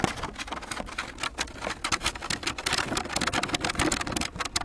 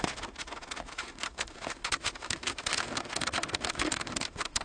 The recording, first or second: first